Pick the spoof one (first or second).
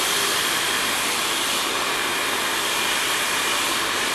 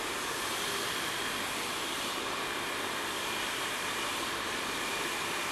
second